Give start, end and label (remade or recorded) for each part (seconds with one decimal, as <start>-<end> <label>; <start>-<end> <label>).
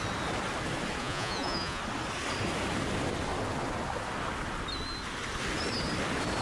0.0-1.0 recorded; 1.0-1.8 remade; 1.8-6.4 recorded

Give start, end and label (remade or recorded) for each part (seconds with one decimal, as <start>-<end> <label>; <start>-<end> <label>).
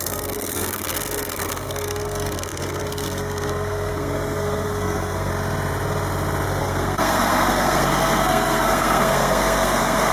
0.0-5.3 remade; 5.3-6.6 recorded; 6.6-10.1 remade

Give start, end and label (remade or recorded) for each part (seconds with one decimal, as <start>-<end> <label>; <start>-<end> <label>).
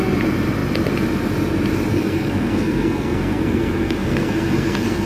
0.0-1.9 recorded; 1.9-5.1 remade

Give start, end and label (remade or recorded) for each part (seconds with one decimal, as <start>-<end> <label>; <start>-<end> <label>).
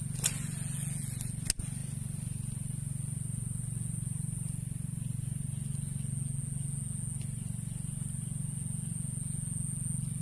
0.0-10.2 recorded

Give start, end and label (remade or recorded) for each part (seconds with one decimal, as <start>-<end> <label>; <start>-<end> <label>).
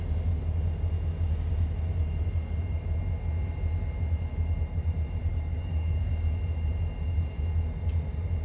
0.0-5.3 recorded; 5.3-6.1 remade; 6.1-8.4 recorded